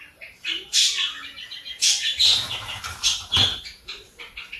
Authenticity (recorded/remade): remade